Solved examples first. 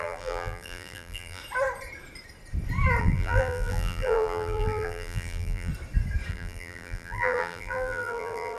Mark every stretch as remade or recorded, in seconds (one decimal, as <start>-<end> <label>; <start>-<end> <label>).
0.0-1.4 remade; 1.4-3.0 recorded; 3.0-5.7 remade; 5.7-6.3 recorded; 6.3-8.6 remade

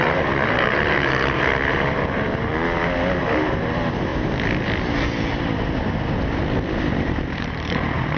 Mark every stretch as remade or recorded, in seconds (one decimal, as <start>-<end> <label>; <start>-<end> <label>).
0.0-2.5 remade; 2.5-3.2 recorded; 3.2-4.1 remade; 4.1-7.0 recorded; 7.0-8.2 remade

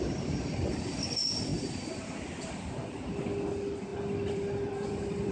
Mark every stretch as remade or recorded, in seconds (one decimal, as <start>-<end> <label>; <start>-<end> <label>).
0.0-3.9 recorded; 3.9-5.3 remade

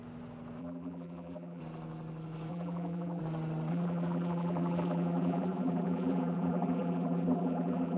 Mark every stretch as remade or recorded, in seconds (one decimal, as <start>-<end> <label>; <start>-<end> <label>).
0.0-0.6 recorded; 0.6-1.6 remade; 1.6-2.5 recorded; 2.5-3.2 remade; 3.2-3.7 recorded; 3.7-8.0 remade